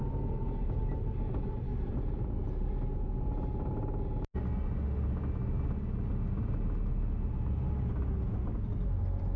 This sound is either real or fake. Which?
real